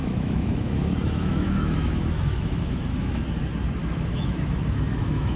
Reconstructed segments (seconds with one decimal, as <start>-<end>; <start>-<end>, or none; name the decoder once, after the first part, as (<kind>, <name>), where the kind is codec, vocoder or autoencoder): 0.0-3.2 (autoencoder, DAC-VAE); 3.8-5.4